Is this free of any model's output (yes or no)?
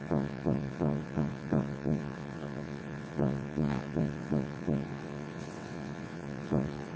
no